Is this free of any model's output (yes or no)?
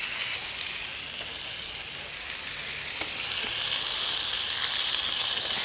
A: yes